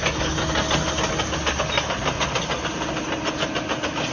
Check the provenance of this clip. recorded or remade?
recorded